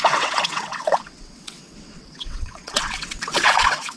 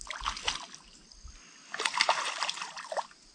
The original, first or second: second